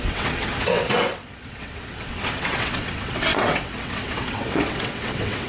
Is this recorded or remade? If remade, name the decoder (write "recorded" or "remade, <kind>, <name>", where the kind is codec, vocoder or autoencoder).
remade, vocoder, WaveNeXt